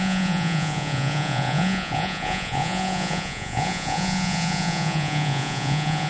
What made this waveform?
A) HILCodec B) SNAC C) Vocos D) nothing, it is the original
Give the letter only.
C